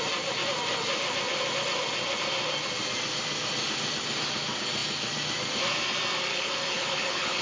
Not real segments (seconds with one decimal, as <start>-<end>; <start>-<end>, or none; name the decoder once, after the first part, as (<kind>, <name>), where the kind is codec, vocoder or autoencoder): 6.3-7.4 (codec, HILCodec)